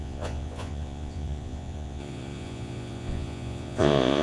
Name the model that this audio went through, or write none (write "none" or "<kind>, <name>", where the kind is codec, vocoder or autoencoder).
vocoder, Vocos